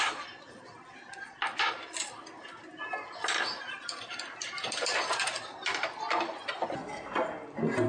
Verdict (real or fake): real